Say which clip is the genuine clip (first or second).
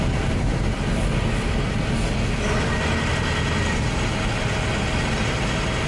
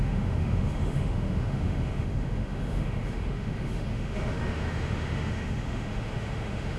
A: first